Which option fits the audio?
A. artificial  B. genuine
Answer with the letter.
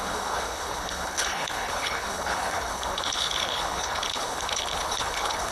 A